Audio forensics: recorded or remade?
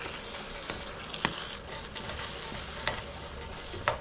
recorded